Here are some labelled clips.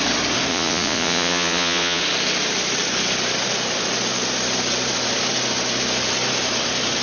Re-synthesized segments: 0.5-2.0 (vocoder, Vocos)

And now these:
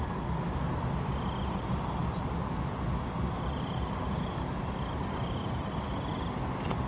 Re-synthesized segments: none

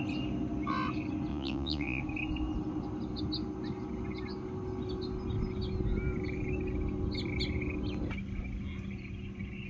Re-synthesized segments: 1.3-2.0 (vocoder, Vocos)

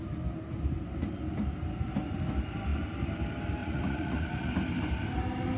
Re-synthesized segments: 3.6-4.5 (vocoder, Vocos)

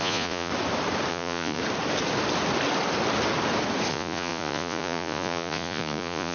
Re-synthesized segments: 0.0-0.5 (vocoder, Vocos); 1.1-1.6; 3.9-6.3

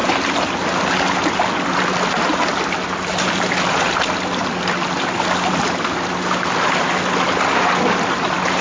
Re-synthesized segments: none

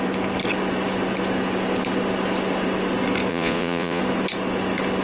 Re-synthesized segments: 3.3-4.0 (vocoder, Vocos)